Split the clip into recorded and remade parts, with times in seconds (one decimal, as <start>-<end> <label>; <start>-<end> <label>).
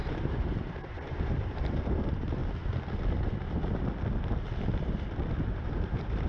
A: 0.0-2.4 remade; 2.4-5.5 recorded; 5.5-6.3 remade